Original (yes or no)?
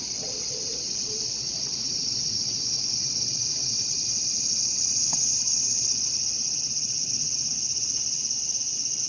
no